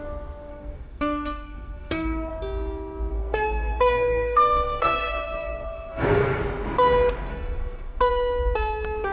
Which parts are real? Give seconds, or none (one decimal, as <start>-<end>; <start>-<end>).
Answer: 0.0-0.5; 2.3-3.1; 6.4-7.3; 8.1-9.1